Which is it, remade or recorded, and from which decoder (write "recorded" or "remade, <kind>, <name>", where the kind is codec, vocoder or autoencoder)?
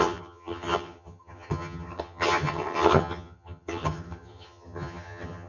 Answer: remade, vocoder, HiFi-GAN